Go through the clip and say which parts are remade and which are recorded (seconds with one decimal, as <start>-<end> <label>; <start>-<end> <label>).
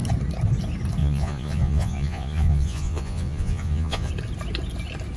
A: 0.0-1.0 recorded; 1.0-4.1 remade; 4.1-5.2 recorded